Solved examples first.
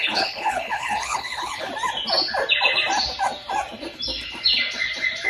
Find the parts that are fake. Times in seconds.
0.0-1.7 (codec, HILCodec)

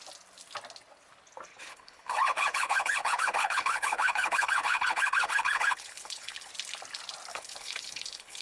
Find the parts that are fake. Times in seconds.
1.5-6.5 (codec, HILCodec); 7.3-8.4

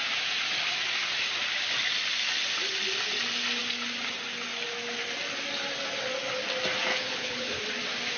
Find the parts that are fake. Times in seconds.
6.9-7.6 (codec, HILCodec)

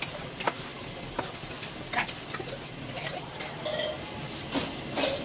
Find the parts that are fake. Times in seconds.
none

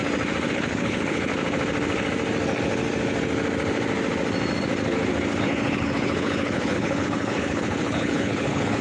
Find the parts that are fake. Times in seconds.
0.5-1.3 (codec, HILCodec); 5.4-8.8

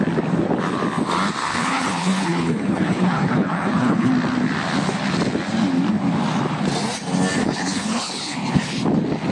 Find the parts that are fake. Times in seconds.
1.4-4.1 (codec, HILCodec); 7.4-8.8

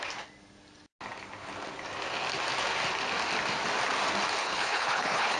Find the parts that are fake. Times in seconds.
4.4-5.4 (codec, HILCodec)

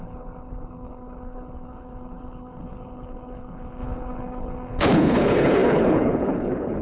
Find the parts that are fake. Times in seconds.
0.0-6.8 (codec, HILCodec)